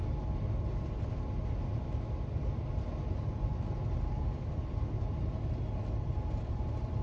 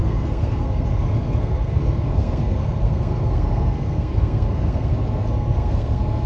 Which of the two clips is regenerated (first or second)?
second